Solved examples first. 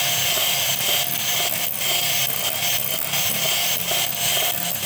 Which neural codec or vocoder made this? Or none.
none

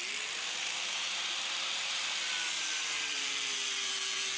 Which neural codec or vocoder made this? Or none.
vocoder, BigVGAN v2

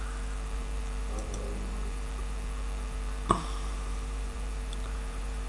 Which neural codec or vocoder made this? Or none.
vocoder, BigVGAN v2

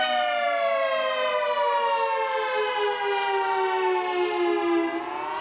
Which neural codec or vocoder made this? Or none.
none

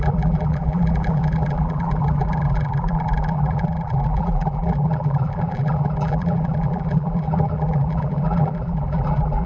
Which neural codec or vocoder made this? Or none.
vocoder, BigVGAN v2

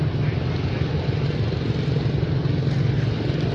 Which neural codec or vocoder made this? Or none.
none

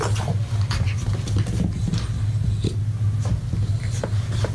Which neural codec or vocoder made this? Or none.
none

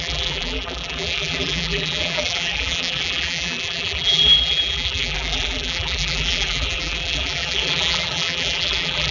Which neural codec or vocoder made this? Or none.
vocoder, BigVGAN v2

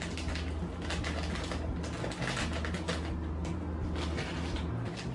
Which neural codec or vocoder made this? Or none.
none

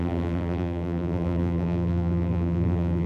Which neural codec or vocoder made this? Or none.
vocoder, BigVGAN v2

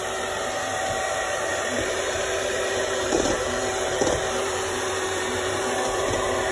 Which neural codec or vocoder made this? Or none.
vocoder, BigVGAN v2